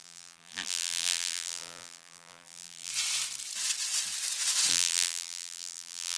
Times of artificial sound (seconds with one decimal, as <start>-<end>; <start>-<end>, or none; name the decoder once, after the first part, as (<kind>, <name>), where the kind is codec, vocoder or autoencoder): 0.0-2.9 (vocoder, BigVGAN v2); 4.7-6.2

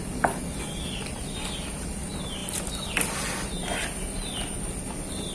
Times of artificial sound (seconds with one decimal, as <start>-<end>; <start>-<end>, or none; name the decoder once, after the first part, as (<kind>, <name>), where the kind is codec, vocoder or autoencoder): none